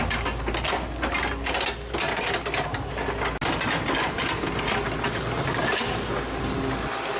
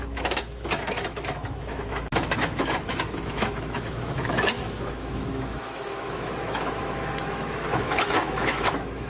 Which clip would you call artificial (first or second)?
second